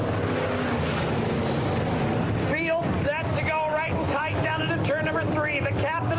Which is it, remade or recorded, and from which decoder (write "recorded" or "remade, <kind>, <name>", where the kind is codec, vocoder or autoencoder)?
recorded